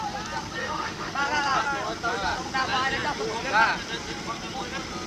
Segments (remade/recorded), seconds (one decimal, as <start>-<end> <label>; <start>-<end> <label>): 0.0-0.6 recorded; 0.6-1.1 remade; 1.1-5.1 recorded